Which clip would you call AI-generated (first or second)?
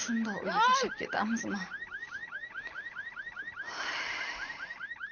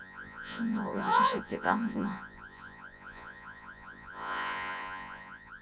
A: second